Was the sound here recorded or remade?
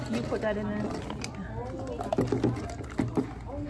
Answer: recorded